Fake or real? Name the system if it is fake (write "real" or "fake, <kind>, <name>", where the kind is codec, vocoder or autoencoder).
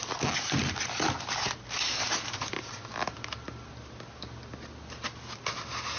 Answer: real